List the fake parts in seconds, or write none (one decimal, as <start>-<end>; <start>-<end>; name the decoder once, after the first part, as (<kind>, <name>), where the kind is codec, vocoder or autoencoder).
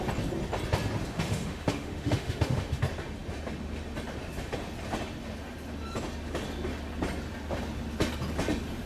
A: 1.1-2.8 (autoencoder, DAC-VAE)